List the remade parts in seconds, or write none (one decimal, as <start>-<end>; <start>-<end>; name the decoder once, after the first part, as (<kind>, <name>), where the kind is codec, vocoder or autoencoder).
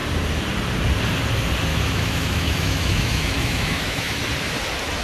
1.7-4.2 (autoencoder, DAC-VAE)